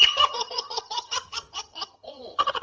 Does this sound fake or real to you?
fake